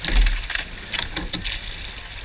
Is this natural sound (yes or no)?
yes